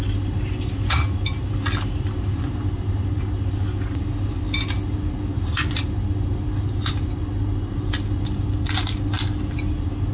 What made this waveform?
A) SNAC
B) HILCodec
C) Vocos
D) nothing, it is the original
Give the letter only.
D